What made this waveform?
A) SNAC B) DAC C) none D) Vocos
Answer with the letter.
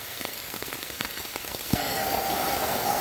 A